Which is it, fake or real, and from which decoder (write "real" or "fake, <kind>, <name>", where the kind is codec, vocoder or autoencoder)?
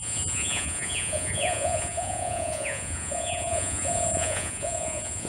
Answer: fake, vocoder, Vocos